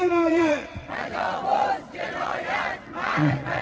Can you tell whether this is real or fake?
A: fake